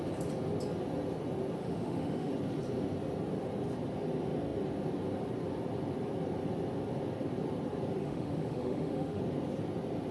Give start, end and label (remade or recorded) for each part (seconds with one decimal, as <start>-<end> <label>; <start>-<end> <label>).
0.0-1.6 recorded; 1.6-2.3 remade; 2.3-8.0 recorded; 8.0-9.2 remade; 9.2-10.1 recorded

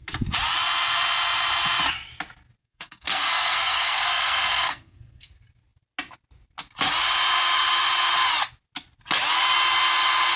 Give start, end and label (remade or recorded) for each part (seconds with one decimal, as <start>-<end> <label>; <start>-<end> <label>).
0.0-2.6 recorded; 2.6-5.3 remade; 5.3-10.4 recorded

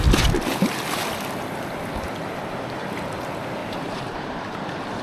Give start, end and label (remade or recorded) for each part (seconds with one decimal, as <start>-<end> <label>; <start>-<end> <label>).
0.0-3.6 recorded; 3.6-4.6 remade; 4.6-5.0 recorded

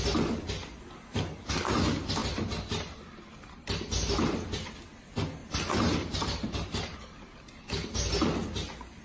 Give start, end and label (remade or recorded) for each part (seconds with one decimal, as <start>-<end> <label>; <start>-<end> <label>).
0.0-2.2 recorded; 2.2-4.7 remade; 4.7-9.0 recorded

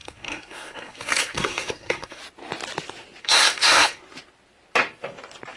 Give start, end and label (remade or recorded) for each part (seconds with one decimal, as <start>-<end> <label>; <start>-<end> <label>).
0.0-2.2 remade; 2.2-3.2 recorded; 3.2-4.0 remade; 4.0-5.6 recorded

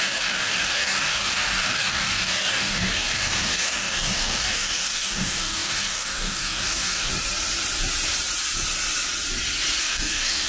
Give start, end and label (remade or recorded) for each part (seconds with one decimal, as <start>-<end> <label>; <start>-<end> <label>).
0.0-7.1 remade; 7.1-9.8 recorded; 9.8-10.5 remade

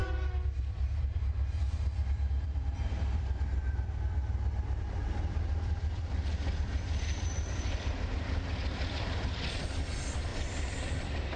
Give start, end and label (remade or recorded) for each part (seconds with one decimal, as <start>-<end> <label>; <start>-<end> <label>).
0.0-0.6 recorded; 0.6-10.3 remade; 10.3-11.0 recorded; 11.0-11.4 remade

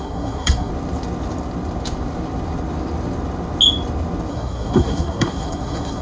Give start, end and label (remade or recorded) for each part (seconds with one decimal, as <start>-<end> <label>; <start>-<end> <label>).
0.0-0.7 remade; 0.7-4.3 recorded; 4.3-6.0 remade